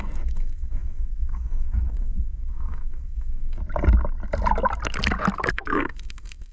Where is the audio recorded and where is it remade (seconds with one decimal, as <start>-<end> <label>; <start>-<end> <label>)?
0.0-3.6 remade; 3.6-5.5 recorded; 5.5-6.5 remade